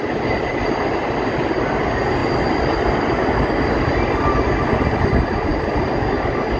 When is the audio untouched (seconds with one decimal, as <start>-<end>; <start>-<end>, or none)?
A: 0.0-6.6